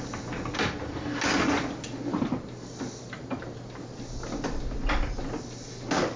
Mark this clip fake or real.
real